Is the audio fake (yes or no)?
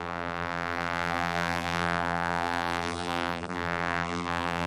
yes